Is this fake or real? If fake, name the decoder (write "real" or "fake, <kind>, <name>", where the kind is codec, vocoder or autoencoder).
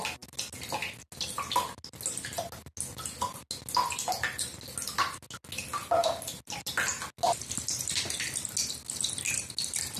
real